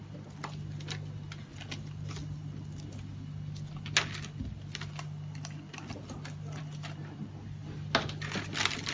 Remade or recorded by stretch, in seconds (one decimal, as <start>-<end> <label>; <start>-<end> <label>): 0.0-8.9 recorded